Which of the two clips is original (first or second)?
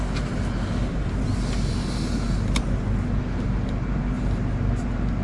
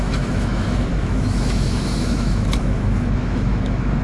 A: first